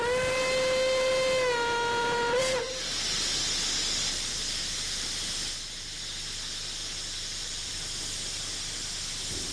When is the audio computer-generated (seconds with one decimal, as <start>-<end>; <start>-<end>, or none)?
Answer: 4.1-5.1; 7.4-8.0